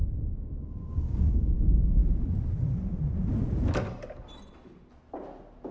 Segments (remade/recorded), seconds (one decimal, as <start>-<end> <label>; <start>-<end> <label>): 0.0-2.0 remade; 2.0-5.7 recorded